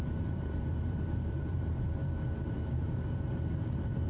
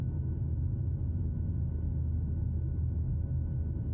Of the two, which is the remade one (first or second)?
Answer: first